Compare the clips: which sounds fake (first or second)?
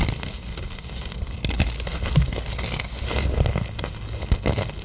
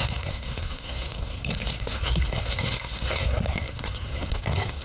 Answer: second